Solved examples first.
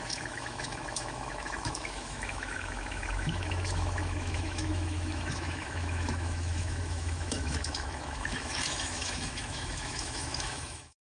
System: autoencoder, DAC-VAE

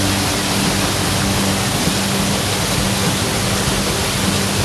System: none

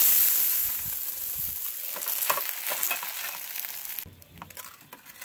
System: none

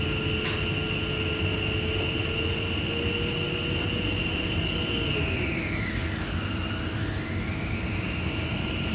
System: none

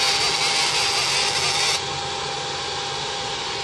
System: none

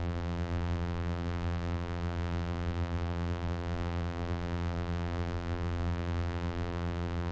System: vocoder, BigVGAN v2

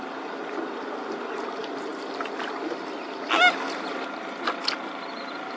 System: none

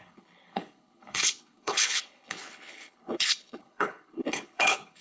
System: codec, HILCodec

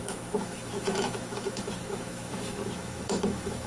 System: autoencoder, DAC-VAE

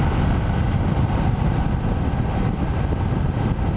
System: none